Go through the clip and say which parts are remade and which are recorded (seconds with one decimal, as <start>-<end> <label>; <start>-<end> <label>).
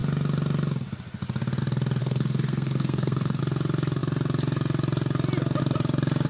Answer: 0.0-2.0 recorded; 2.0-3.4 remade; 3.4-6.3 recorded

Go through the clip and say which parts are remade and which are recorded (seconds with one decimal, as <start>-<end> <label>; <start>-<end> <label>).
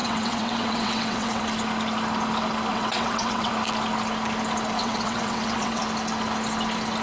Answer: 0.0-1.4 remade; 1.4-2.7 recorded; 2.7-3.5 remade; 3.5-4.8 recorded; 4.8-5.8 remade; 5.8-7.0 recorded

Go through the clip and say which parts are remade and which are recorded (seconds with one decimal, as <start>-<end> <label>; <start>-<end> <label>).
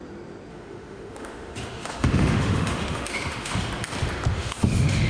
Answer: 0.0-0.5 recorded; 0.5-3.6 remade; 3.6-4.3 recorded; 4.3-5.1 remade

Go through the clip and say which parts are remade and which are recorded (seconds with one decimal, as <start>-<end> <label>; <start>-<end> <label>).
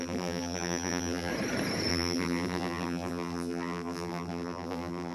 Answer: 0.0-1.3 remade; 1.3-1.9 recorded; 1.9-5.1 remade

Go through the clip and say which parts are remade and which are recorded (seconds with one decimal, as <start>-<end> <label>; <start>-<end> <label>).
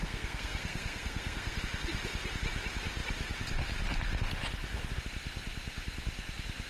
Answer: 0.0-1.6 remade; 1.6-6.7 recorded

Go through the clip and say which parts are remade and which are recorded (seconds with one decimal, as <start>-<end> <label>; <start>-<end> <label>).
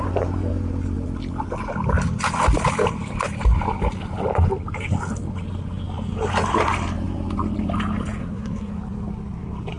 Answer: 0.0-8.2 recorded; 8.2-8.7 remade; 8.7-9.8 recorded